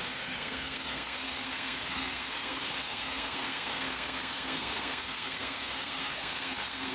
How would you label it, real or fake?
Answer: fake